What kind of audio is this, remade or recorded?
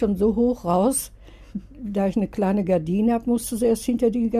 recorded